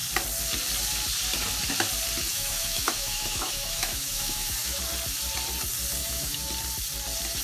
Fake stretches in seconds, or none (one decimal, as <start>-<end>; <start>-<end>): 2.3-4.8; 6.0-6.5